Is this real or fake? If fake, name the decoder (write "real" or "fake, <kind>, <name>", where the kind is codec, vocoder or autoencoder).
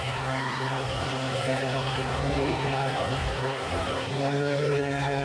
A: fake, codec, SNAC